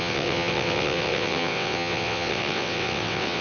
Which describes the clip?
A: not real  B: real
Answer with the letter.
A